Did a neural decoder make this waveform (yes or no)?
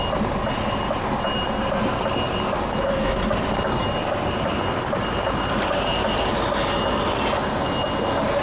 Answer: no